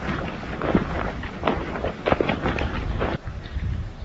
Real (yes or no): no